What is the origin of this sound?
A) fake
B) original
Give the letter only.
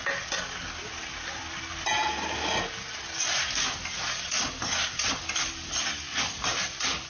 B